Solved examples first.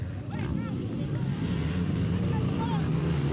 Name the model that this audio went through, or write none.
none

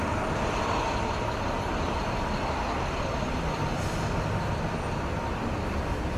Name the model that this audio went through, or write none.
none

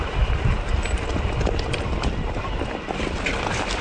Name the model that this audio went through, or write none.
none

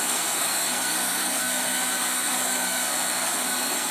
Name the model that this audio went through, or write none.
codec, SNAC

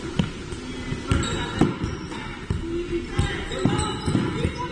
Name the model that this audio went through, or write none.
none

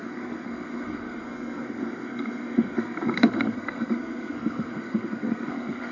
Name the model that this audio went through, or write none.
codec, SNAC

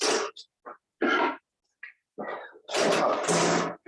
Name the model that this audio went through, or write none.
none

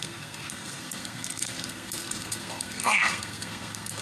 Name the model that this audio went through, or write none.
codec, SNAC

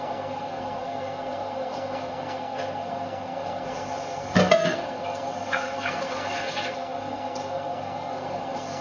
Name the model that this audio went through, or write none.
codec, SNAC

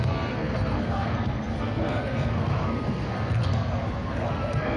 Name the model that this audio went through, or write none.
codec, SNAC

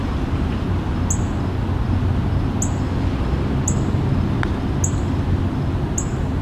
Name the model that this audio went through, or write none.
none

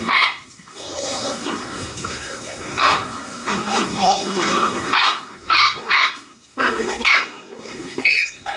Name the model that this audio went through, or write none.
codec, SNAC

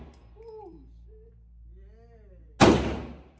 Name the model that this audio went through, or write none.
none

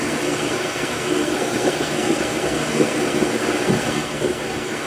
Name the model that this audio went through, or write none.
codec, SNAC